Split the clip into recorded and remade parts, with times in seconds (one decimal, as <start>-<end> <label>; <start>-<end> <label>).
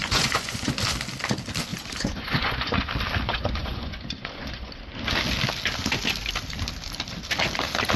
0.0-0.7 remade; 0.7-1.7 recorded; 1.7-2.9 remade; 2.9-3.3 recorded; 3.3-4.8 remade; 4.8-8.0 recorded